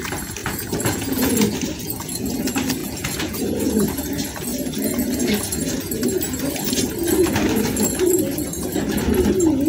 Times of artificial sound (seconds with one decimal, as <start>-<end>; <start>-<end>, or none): 0.4-1.3; 2.8-3.4